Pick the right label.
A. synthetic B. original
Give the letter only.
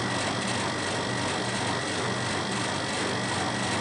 B